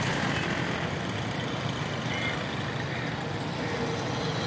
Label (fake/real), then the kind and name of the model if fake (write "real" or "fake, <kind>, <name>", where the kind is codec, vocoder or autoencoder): real